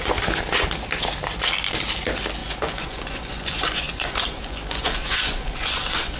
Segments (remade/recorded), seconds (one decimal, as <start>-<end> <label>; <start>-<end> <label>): 0.0-2.4 recorded; 2.4-6.2 remade